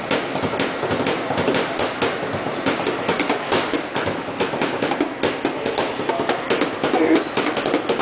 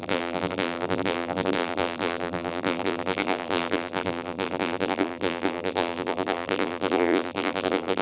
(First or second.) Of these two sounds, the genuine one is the first